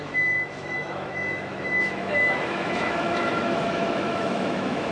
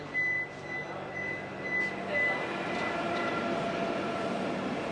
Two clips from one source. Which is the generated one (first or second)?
first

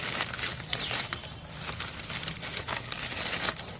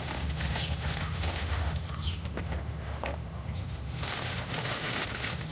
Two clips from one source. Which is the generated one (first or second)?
second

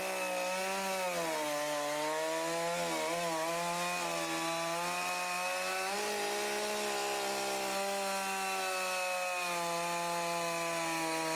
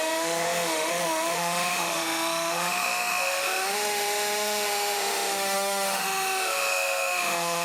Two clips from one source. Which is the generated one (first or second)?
second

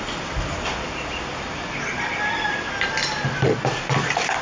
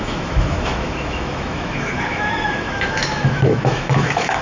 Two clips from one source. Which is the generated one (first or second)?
second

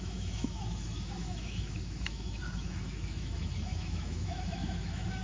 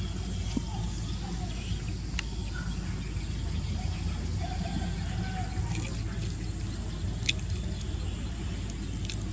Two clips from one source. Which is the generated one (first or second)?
first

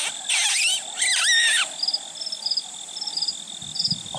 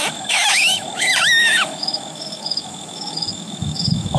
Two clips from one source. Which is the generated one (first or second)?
second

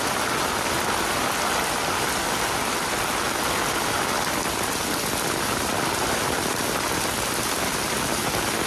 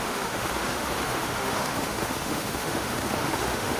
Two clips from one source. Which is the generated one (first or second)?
second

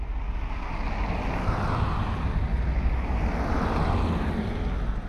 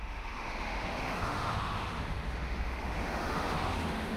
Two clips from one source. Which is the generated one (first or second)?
second